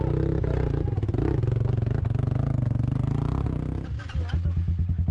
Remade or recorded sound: recorded